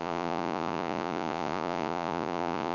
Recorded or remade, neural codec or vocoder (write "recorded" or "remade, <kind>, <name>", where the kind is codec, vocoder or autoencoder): remade, vocoder, Vocos